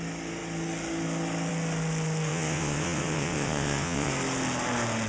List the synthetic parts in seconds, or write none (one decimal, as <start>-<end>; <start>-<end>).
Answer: 2.3-4.1